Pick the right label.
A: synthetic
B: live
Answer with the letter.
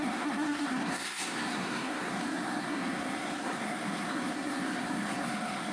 A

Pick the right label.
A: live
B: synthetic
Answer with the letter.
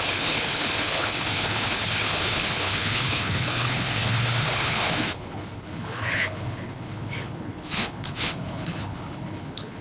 B